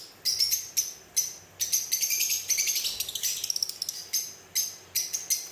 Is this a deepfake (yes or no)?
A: no